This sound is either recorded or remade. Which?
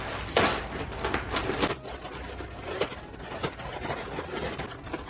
recorded